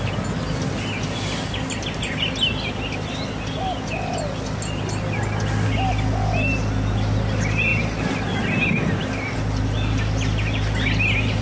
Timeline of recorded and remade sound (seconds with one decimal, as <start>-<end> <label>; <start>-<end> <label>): 0.0-11.4 recorded